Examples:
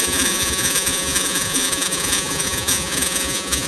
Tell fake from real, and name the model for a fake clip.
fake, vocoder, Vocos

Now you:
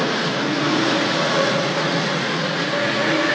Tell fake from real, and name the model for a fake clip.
fake, vocoder, Vocos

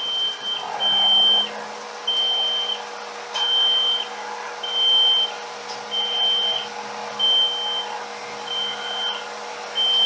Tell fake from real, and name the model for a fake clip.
real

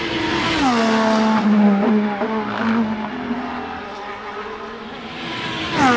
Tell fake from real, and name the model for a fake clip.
real